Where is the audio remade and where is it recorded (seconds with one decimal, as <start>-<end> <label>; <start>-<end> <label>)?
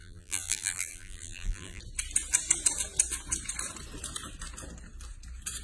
0.0-1.8 remade; 1.8-5.6 recorded